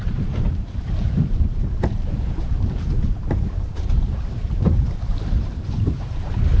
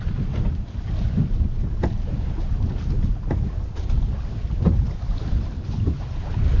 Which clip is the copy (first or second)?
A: first